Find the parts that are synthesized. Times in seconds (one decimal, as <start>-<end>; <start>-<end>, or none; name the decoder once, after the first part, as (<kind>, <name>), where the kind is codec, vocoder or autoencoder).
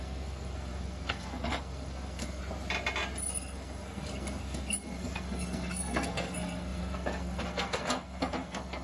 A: 0.0-2.4 (codec, SNAC); 3.2-8.8